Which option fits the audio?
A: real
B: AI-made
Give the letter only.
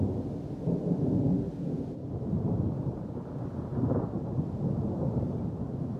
A